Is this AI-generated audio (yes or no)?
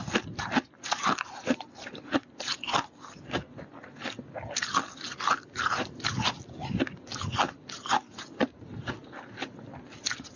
no